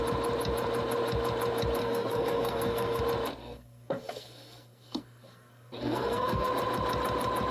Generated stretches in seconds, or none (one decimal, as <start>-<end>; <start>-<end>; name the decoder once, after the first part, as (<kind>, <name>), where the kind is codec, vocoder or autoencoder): 1.8-3.0 (codec, SNAC); 3.4-6.5